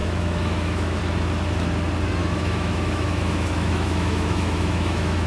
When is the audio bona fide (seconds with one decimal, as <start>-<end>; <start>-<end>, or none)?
1.0-2.2